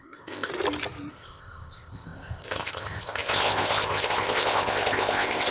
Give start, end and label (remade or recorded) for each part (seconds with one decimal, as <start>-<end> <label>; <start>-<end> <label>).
0.0-0.5 remade; 0.5-1.1 recorded; 1.1-5.5 remade